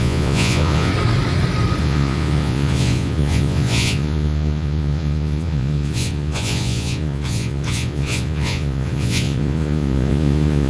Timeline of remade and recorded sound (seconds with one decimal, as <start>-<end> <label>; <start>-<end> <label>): 0.0-0.9 remade; 0.9-1.8 recorded; 1.8-10.7 remade